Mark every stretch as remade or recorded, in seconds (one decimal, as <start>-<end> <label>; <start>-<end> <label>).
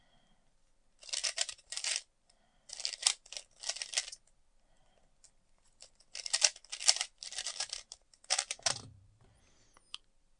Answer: 0.0-1.2 recorded; 1.2-2.7 remade; 2.7-7.3 recorded; 7.3-9.4 remade; 9.4-10.4 recorded